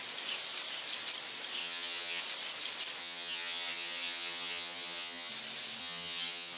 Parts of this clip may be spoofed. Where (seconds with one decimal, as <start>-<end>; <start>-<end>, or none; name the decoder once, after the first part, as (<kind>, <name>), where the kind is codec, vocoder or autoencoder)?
1.6-2.2 (vocoder, HiFi-GAN); 3.0-5.3; 5.8-6.6